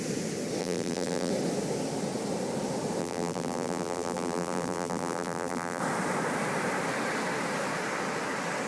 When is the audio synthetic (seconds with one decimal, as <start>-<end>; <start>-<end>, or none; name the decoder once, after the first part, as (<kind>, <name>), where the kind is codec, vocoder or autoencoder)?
0.6-1.3 (vocoder, BigVGAN v2); 3.0-5.8